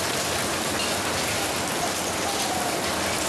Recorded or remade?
remade